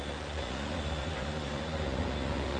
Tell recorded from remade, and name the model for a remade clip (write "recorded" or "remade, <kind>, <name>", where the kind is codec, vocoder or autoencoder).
remade, vocoder, Vocos